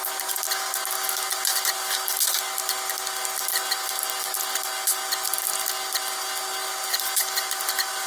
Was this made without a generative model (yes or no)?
yes